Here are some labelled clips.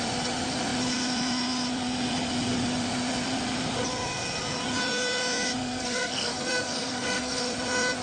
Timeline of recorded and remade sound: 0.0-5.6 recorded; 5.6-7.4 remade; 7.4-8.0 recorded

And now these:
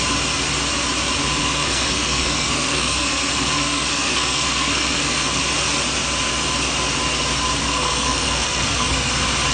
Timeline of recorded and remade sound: 0.0-1.4 recorded; 1.4-5.4 remade; 5.4-7.6 recorded; 7.6-9.1 remade; 9.1-9.5 recorded

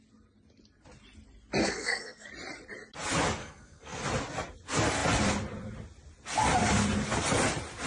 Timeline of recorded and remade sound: 0.0-1.6 recorded; 1.6-2.3 remade; 2.3-3.4 recorded; 3.4-4.0 remade; 4.0-7.9 recorded

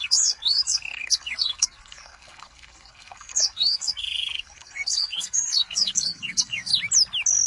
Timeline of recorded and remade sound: 0.0-6.7 remade; 6.7-7.5 recorded

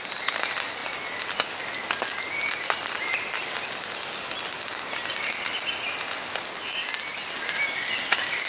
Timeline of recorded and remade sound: 0.0-8.5 recorded